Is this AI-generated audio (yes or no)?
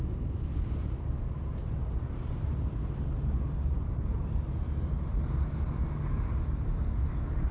no